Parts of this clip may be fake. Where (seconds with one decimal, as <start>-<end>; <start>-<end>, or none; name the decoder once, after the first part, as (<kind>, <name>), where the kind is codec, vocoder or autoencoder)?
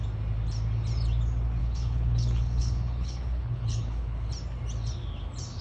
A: 1.6-4.3 (codec, HILCodec)